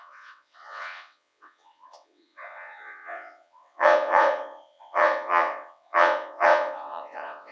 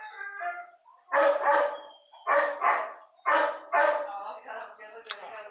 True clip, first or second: second